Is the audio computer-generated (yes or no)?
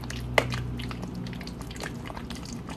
no